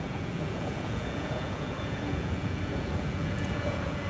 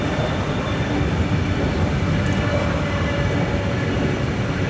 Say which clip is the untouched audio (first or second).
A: second